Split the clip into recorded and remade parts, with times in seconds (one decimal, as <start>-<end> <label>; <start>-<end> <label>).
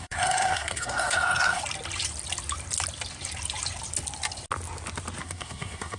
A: 0.0-1.6 remade; 1.6-5.2 recorded; 5.2-6.0 remade